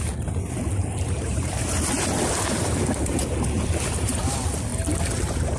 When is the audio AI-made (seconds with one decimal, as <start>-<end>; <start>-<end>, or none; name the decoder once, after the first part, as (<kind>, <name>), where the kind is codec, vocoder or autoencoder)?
0.8-4.2 (vocoder, BigVGAN v2)